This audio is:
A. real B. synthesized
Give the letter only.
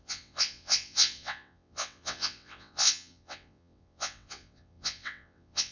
B